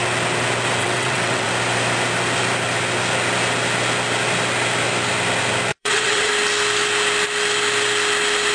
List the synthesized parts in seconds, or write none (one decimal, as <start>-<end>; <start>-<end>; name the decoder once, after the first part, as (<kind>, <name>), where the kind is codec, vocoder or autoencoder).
0.8-1.5 (vocoder, WaveNeXt); 5.7-6.3